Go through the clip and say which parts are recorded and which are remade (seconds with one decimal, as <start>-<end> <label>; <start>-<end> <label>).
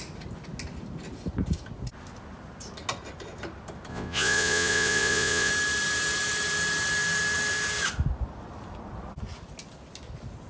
0.0-3.9 recorded; 3.9-5.5 remade; 5.5-10.5 recorded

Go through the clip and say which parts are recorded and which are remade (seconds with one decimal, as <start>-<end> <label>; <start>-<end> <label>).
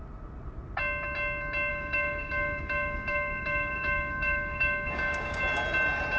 0.0-1.7 recorded; 1.7-5.4 remade; 5.4-6.2 recorded